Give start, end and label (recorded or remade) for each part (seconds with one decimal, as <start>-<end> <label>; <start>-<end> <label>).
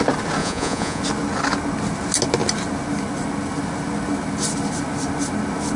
0.0-0.4 recorded; 0.4-1.0 remade; 1.0-5.8 recorded